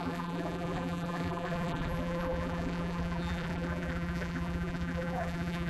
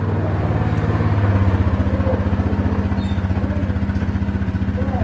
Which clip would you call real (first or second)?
second